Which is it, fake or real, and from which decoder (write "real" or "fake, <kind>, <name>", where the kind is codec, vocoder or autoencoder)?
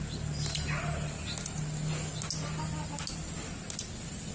real